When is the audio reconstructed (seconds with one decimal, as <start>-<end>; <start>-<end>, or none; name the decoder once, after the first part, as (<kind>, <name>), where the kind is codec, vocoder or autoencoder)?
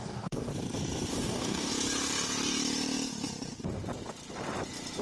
0.0-0.5 (codec, DAC); 1.1-1.7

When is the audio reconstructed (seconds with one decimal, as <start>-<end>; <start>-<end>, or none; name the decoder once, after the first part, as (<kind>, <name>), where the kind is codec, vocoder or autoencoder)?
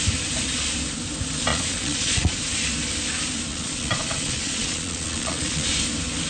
1.5-2.4 (vocoder, Vocos); 3.5-5.7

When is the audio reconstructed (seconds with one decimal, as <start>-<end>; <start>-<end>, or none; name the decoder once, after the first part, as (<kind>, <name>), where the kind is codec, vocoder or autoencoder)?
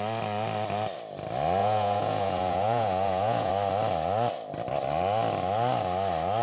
1.6-3.5 (vocoder, Vocos)